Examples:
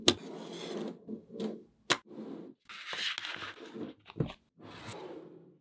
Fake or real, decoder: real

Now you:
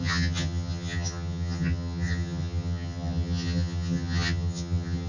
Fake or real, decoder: fake, vocoder, HiFi-GAN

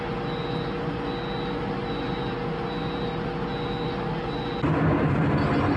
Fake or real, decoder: real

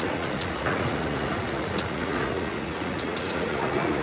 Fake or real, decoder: fake, vocoder, Vocos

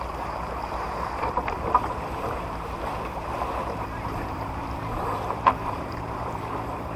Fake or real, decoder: fake, vocoder, BigVGAN v2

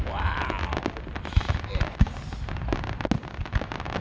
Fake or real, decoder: real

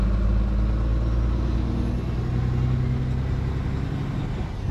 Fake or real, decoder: real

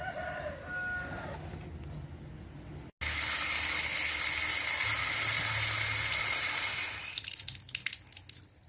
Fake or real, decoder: real